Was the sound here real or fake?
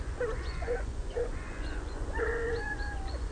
fake